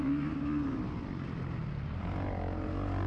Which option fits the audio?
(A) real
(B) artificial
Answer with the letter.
A